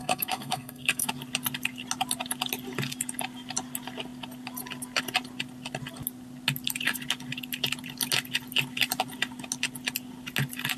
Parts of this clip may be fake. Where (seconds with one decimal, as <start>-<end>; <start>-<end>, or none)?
0.0-1.1